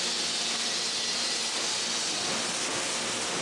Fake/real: real